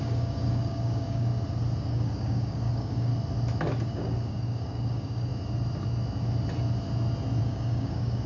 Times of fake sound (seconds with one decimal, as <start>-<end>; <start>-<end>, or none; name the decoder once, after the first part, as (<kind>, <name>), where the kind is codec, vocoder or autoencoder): 0.0-1.3 (codec, DAC); 1.9-3.1; 3.8-5.3; 7.4-8.3